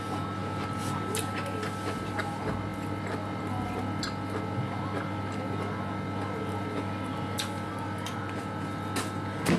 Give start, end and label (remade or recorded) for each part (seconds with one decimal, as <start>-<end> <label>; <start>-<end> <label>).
0.0-9.6 recorded